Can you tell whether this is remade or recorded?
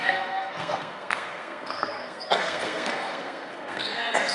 remade